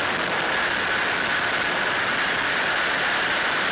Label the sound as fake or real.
real